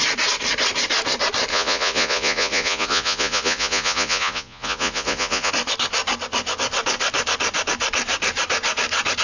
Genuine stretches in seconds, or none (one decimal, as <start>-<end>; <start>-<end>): 0.0-1.5; 5.5-9.2